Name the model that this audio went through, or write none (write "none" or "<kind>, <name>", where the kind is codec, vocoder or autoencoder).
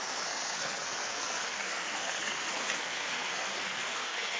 codec, SNAC